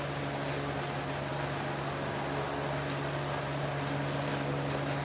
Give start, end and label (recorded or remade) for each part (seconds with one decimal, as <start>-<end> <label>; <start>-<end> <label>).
0.0-5.0 recorded

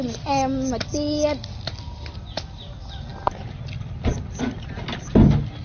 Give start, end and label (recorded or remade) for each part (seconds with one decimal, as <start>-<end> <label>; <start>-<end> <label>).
0.0-5.6 recorded

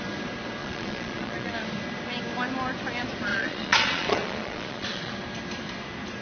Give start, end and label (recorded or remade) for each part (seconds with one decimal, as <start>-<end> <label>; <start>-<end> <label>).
0.0-0.6 recorded; 0.6-1.5 remade; 1.5-3.3 recorded; 3.3-5.1 remade; 5.1-6.2 recorded

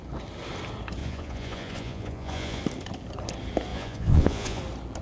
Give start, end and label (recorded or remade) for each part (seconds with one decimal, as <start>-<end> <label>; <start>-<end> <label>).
0.0-1.0 recorded; 1.0-2.6 remade; 2.6-3.7 recorded; 3.7-4.6 remade; 4.6-5.0 recorded